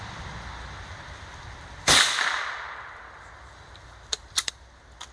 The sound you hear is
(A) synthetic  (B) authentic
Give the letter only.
A